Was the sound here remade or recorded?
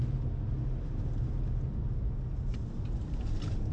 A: recorded